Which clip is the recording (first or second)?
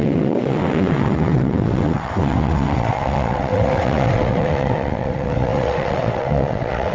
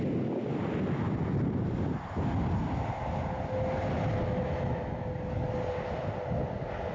second